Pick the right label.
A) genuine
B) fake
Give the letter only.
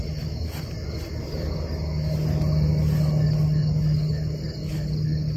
A